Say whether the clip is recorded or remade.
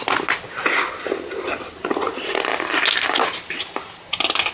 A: recorded